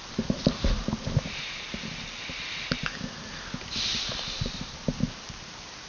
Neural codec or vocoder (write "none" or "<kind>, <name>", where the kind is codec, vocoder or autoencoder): none